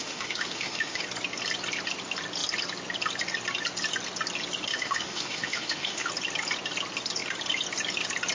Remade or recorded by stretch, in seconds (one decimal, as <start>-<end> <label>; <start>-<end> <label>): 0.0-1.0 remade; 1.0-4.7 recorded; 4.7-6.1 remade; 6.1-8.3 recorded